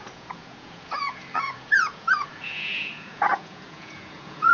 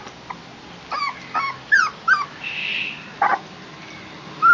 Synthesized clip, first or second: first